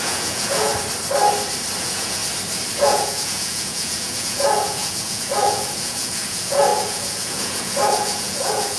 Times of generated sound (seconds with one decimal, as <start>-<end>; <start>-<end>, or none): 0.0-0.7; 1.8-2.2; 2.8-8.8